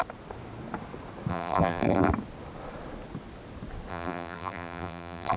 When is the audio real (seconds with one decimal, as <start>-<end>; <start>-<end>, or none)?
0.0-1.3; 2.1-3.9